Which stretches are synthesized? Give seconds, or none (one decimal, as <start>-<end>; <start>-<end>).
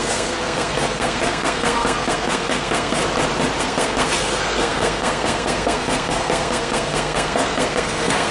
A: 0.0-3.0; 3.6-8.3